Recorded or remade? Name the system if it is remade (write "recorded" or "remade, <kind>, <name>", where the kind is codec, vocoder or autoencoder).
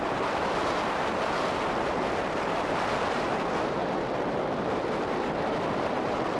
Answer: remade, vocoder, BigVGAN v2